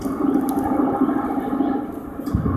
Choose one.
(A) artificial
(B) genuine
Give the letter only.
B